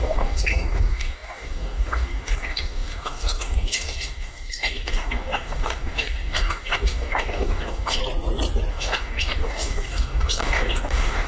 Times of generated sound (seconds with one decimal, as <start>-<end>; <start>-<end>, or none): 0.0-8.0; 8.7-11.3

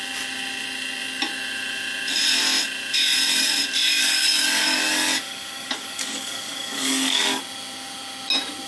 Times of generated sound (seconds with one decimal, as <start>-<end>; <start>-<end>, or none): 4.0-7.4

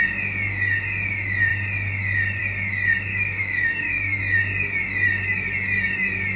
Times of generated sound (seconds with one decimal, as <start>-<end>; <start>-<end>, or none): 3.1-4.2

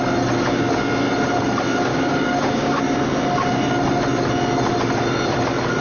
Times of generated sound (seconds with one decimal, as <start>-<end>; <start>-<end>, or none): 1.9-2.8

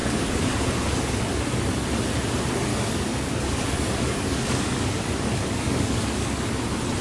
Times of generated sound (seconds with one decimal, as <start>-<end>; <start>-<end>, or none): 0.0-1.0; 2.7-6.5

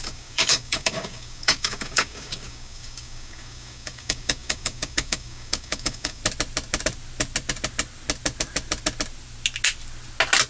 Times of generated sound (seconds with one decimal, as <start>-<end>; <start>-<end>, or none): 0.0-6.2

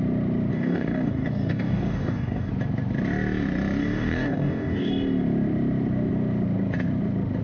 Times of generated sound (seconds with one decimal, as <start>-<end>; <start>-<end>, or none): 0.5-2.5; 3.8-4.9

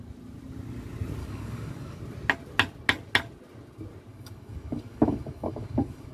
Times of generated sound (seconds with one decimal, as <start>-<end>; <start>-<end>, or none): 1.2-2.0; 4.1-6.1